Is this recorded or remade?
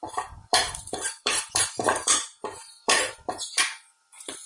remade